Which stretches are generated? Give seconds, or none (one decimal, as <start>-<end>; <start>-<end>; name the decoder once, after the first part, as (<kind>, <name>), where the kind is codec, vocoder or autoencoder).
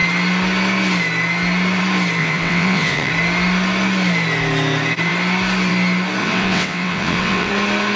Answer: 2.2-3.1 (vocoder, WaveNeXt); 6.2-7.5